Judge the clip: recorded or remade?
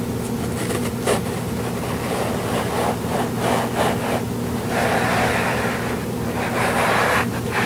recorded